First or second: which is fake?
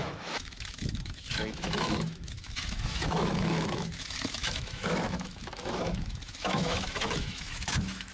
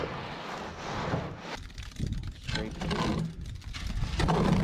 first